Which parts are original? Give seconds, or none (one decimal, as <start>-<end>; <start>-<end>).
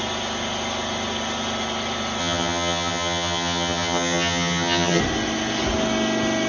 0.0-2.2; 5.0-6.5